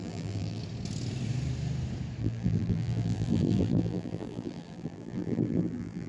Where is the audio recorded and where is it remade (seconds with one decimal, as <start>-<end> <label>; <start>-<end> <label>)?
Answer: 0.0-0.6 remade; 0.6-2.2 recorded; 2.2-6.1 remade